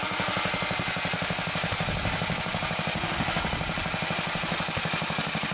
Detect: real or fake real